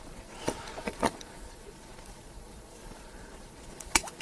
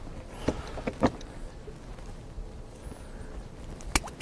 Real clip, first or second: second